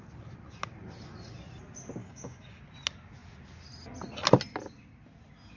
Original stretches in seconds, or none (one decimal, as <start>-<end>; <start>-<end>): 0.0-2.0; 2.6-5.6